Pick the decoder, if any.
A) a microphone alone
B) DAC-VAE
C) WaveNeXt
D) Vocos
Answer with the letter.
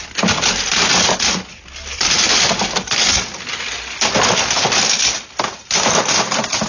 A